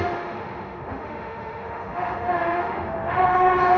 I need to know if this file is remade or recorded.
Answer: remade